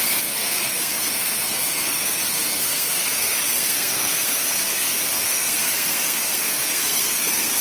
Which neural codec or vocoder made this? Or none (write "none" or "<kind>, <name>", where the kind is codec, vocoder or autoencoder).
codec, SNAC